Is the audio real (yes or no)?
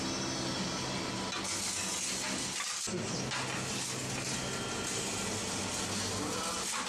yes